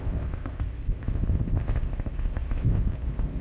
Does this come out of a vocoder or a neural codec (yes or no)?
yes